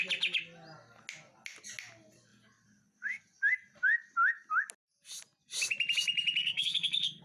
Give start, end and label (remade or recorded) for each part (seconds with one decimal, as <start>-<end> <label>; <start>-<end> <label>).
0.0-6.4 recorded; 6.4-7.2 remade